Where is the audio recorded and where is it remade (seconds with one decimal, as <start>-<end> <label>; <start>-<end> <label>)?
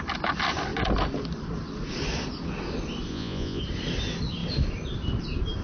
0.0-3.1 recorded; 3.1-3.6 remade; 3.6-5.6 recorded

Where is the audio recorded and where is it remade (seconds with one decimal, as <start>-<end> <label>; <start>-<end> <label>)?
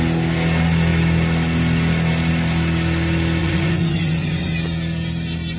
0.0-3.4 recorded; 3.4-4.5 remade; 4.5-5.6 recorded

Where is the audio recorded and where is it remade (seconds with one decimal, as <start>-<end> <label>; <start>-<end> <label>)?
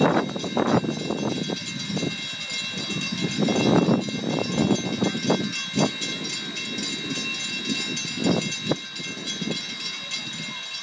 0.0-10.8 recorded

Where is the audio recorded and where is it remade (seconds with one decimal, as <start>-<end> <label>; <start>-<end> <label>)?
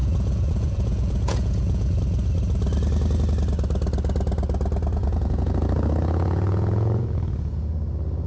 0.0-2.0 remade; 2.0-5.0 recorded; 5.0-7.7 remade; 7.7-8.3 recorded